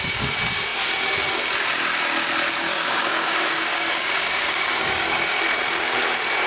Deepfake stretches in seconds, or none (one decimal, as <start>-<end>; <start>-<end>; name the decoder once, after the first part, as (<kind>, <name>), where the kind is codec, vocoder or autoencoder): 2.7-5.4 (codec, DAC)